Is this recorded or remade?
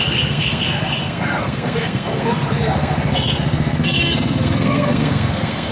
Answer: remade